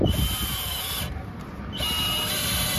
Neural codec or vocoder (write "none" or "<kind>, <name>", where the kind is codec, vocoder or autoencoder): none